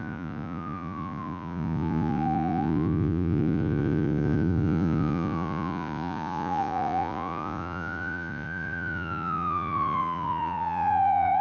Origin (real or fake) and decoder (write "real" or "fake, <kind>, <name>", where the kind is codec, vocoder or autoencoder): fake, vocoder, Vocos